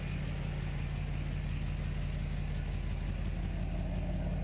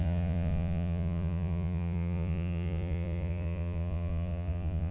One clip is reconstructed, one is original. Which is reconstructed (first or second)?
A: second